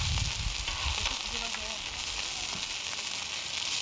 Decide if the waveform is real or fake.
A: real